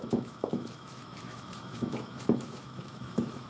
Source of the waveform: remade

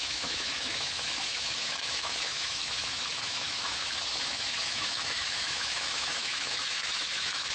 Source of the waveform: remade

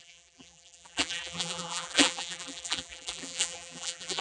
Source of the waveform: remade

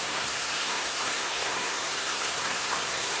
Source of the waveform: remade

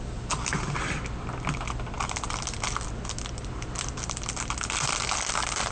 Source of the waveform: recorded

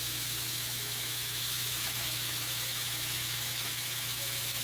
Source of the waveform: remade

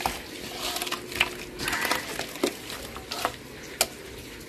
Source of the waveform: recorded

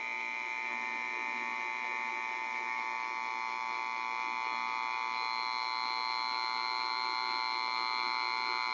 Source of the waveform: recorded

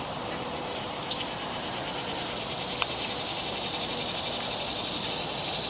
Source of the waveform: recorded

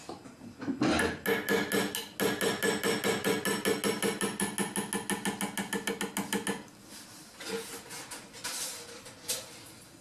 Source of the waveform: recorded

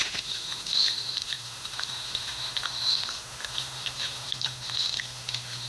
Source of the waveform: remade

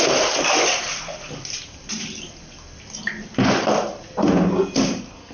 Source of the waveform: recorded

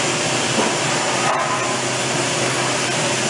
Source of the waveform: recorded